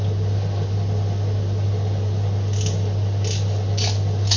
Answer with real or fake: real